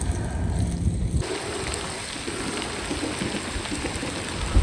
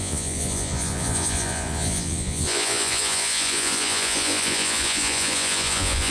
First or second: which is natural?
first